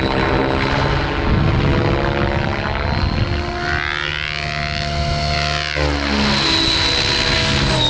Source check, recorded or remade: recorded